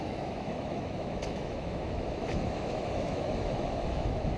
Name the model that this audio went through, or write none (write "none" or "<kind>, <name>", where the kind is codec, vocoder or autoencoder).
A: autoencoder, DAC-VAE